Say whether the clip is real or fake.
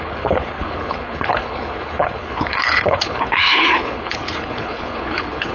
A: fake